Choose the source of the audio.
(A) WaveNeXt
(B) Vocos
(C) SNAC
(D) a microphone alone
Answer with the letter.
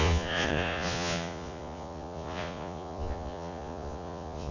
B